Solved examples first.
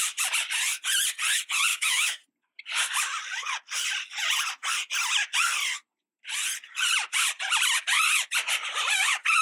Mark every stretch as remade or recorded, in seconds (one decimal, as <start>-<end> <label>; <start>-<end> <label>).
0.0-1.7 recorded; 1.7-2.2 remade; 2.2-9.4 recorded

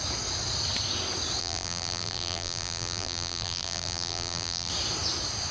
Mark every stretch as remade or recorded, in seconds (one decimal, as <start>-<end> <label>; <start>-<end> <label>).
0.0-1.4 recorded; 1.4-4.7 remade; 4.7-5.5 recorded

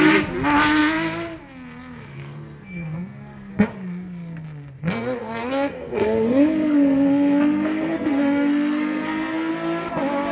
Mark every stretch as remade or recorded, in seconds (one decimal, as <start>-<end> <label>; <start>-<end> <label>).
0.0-2.1 recorded; 2.1-3.5 remade; 3.5-4.8 recorded; 4.8-9.5 remade; 9.5-10.3 recorded

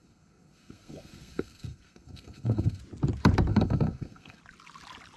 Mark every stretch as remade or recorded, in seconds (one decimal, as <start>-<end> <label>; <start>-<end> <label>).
0.0-2.8 remade; 2.8-3.5 recorded; 3.5-4.4 remade; 4.4-5.2 recorded

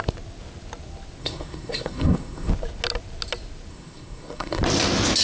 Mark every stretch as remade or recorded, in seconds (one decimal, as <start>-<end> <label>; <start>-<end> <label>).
0.0-1.2 recorded; 1.2-2.5 remade; 2.5-3.7 recorded; 3.7-4.6 remade; 4.6-5.2 recorded